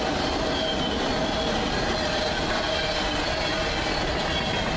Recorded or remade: recorded